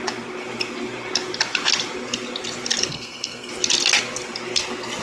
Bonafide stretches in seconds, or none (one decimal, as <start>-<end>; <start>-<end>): 0.0-2.9; 3.5-5.0